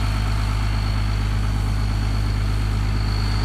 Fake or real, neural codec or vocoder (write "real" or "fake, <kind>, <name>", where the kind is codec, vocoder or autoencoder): real